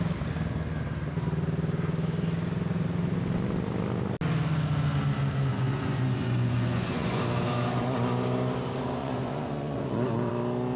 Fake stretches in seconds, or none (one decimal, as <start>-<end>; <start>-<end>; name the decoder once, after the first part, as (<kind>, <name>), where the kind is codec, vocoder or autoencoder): 5.5-7.2 (vocoder, Vocos); 9.0-10.3